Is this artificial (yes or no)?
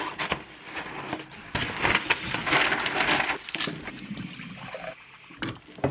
no